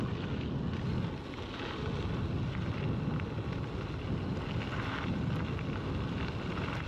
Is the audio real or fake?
real